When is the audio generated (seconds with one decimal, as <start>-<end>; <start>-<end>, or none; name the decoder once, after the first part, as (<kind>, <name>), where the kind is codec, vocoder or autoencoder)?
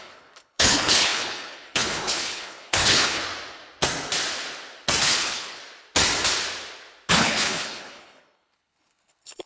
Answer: 0.0-3.2 (codec, HILCodec); 5.0-5.6; 7.1-9.5